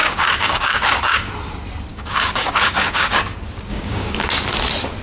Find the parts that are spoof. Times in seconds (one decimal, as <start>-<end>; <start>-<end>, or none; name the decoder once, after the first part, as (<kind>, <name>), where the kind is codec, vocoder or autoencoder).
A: 0.0-1.3 (codec, DAC); 1.9-3.2; 3.7-4.3